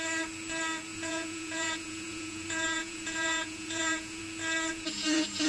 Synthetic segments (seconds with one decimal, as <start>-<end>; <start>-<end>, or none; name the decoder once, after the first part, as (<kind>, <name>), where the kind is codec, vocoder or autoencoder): 0.9-4.2 (vocoder, Vocos); 4.7-5.5